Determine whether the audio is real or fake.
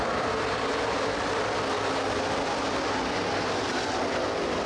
real